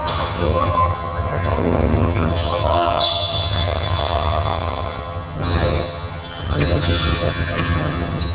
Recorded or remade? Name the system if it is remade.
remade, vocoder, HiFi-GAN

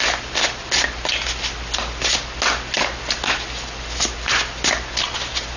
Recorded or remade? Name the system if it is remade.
recorded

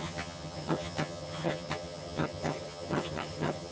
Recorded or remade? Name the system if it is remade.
remade, vocoder, HiFi-GAN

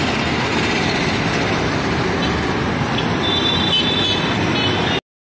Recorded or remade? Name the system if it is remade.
recorded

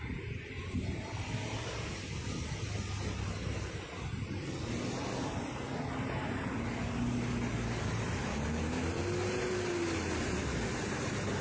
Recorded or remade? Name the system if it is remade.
recorded